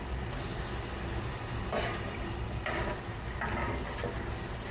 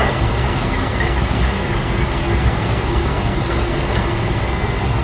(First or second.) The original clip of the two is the first